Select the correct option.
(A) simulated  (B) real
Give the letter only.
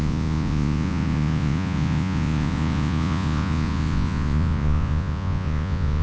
A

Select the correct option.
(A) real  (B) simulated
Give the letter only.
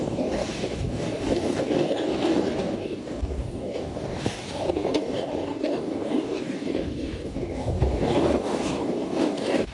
B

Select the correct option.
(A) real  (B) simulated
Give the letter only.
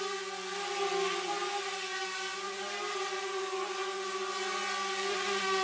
A